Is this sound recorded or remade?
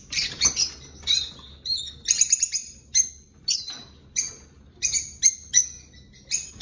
recorded